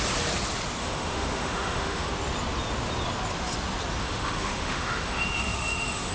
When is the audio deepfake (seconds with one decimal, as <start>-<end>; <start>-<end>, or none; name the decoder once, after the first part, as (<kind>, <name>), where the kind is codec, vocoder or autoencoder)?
0.8-2.1 (autoencoder, DAC-VAE); 4.0-6.1